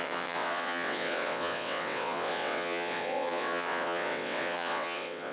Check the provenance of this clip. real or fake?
fake